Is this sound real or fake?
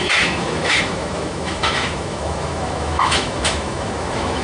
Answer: fake